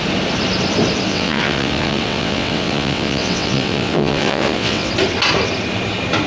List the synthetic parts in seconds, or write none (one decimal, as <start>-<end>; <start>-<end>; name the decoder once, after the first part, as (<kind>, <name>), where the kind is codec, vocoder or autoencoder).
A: 1.1-4.9 (vocoder, WaveNeXt)